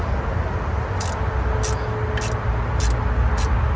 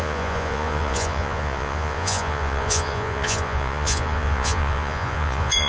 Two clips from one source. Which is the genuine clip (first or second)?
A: first